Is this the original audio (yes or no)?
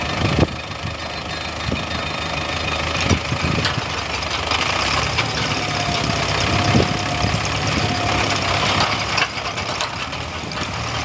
yes